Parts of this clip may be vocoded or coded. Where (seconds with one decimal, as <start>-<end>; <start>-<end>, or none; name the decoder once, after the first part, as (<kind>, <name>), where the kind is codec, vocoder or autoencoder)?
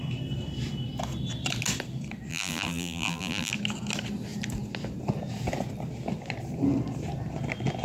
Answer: 2.3-3.5 (vocoder, BigVGAN v2)